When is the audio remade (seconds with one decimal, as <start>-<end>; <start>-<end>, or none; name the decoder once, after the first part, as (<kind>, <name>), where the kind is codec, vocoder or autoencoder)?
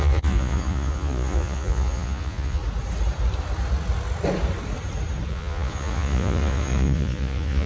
0.0-2.6 (vocoder, Vocos); 5.3-7.7